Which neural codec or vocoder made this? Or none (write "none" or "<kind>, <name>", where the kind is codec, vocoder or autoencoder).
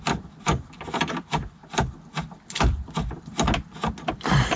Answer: none